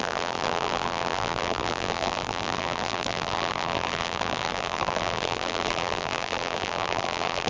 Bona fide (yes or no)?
no